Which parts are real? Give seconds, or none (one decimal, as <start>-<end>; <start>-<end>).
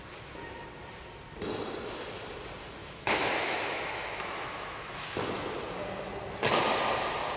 0.0-2.8; 5.3-7.4